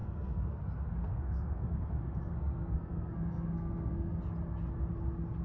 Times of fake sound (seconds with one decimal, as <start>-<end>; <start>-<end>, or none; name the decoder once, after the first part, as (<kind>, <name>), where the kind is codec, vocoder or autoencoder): 0.0-0.6 (codec, SNAC); 1.0-4.2

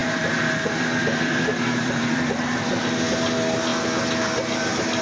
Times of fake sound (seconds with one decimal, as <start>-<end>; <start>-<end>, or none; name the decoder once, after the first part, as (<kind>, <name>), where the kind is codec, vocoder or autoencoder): 0.0-2.8 (vocoder, BigVGAN v2)

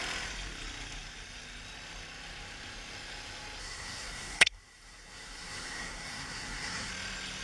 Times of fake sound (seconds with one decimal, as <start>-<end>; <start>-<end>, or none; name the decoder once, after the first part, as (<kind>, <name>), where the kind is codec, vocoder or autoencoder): 3.6-6.9 (codec, SNAC)